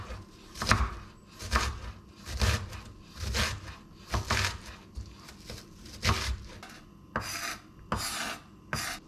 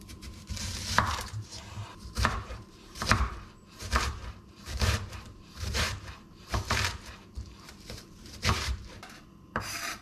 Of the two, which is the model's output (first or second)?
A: second